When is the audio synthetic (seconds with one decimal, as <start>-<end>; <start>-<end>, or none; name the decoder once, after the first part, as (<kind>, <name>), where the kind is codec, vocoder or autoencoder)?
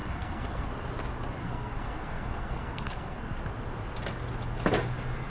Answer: 0.0-0.7 (codec, SNAC); 1.4-3.4